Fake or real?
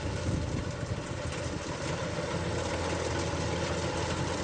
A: real